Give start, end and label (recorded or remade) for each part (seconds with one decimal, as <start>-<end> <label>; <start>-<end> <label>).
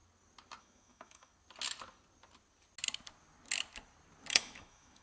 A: 0.0-0.6 recorded; 0.6-1.3 remade; 1.3-4.3 recorded; 4.3-5.0 remade